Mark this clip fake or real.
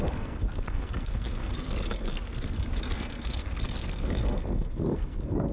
fake